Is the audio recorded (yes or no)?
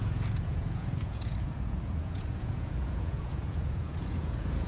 no